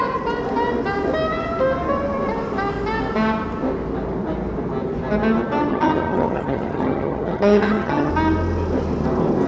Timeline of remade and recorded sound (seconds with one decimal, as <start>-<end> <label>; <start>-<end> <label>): 0.0-5.7 recorded; 5.7-8.1 remade; 8.1-9.5 recorded